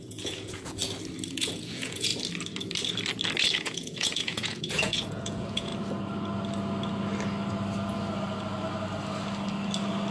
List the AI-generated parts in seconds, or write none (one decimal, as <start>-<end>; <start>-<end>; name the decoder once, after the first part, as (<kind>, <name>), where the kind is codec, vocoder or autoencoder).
0.0-0.8 (vocoder, Vocos); 1.3-2.1; 3.5-5.7